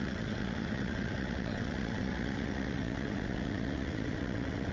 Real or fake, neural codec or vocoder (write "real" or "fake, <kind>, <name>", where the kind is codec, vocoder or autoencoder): fake, vocoder, WaveNeXt